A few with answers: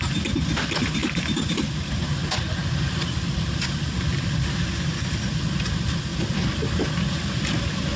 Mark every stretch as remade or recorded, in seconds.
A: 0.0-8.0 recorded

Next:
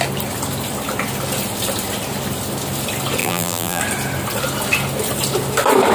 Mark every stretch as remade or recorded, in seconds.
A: 0.0-3.2 recorded; 3.2-3.8 remade; 3.8-5.9 recorded

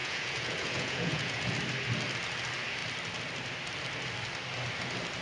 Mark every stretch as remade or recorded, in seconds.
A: 0.0-1.5 remade; 1.5-5.2 recorded

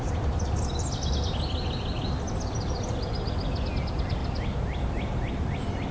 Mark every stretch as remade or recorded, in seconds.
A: 0.0-5.9 recorded

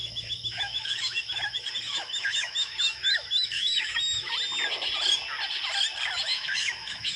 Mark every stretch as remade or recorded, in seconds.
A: 0.0-4.3 remade; 4.3-6.3 recorded; 6.3-7.2 remade

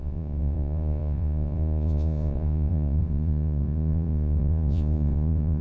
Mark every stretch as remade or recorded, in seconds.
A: 0.0-5.6 remade